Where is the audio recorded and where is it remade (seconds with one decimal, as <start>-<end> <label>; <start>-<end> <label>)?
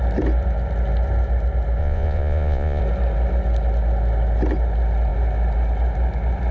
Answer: 0.0-1.8 recorded; 1.8-2.8 remade; 2.8-6.5 recorded